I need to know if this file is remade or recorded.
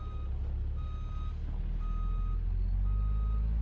recorded